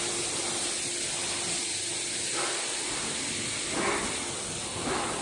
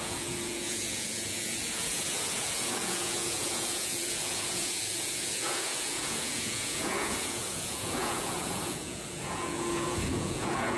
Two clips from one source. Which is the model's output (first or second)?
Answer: second